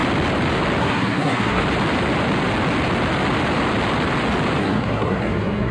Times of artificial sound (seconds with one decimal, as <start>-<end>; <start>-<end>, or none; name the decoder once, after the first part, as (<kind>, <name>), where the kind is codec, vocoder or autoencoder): 0.8-1.6 (codec, SNAC); 4.6-5.7